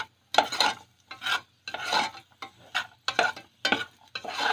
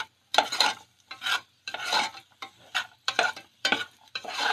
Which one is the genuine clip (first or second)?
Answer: first